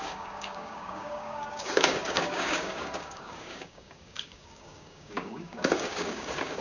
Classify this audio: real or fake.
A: fake